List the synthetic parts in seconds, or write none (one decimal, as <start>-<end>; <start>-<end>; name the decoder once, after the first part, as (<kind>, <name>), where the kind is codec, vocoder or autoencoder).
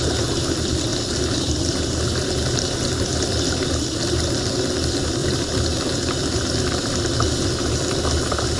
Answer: 5.2-8.0 (vocoder, BigVGAN v2)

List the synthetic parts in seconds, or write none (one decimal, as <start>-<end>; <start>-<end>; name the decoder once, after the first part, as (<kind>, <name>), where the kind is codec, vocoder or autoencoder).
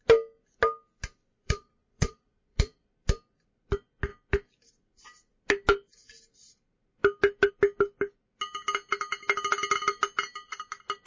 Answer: 1.3-2.9 (vocoder, Vocos)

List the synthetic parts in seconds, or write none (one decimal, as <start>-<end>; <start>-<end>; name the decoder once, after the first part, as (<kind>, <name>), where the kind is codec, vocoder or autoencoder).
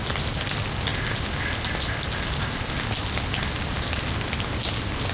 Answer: none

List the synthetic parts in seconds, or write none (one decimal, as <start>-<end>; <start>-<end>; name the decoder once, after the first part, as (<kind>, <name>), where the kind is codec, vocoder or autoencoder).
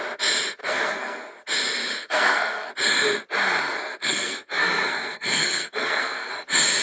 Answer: 0.6-1.3 (codec, SNAC); 2.0-2.7; 3.7-6.3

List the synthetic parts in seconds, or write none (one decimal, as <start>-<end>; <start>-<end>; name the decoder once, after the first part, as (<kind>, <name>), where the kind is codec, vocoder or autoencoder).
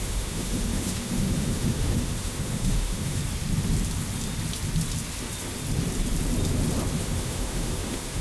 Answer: 0.0-3.2 (autoencoder, DAC-VAE); 7.0-8.2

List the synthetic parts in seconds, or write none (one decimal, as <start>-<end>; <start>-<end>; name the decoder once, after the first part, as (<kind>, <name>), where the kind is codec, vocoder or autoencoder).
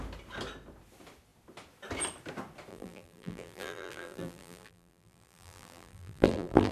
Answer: 2.7-6.7 (vocoder, BigVGAN v2)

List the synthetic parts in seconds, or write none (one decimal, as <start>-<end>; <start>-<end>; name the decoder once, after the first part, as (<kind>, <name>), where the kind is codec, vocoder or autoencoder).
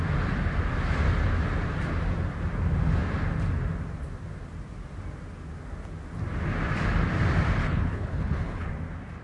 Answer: 7.6-8.7 (codec, HILCodec)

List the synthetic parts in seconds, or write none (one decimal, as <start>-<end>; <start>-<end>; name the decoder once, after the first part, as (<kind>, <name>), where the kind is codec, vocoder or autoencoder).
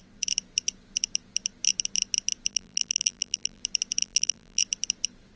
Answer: 2.5-3.6 (vocoder, BigVGAN v2); 4.0-4.6